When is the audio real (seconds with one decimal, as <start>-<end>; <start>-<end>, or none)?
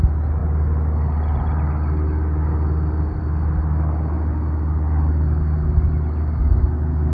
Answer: 0.0-7.1